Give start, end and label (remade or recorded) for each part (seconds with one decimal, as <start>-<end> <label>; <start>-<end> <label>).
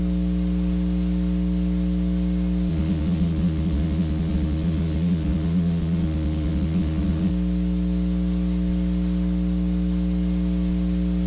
0.0-2.7 recorded; 2.7-7.3 remade; 7.3-11.3 recorded